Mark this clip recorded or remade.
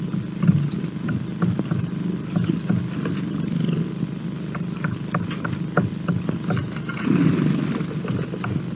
recorded